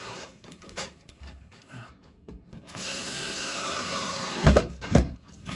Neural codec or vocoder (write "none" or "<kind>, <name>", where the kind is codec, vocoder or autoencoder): codec, SNAC